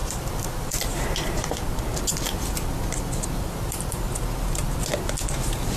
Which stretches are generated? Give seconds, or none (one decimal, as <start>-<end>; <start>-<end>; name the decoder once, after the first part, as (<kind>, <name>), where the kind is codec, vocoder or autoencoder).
0.0-1.6 (vocoder, BigVGAN v2)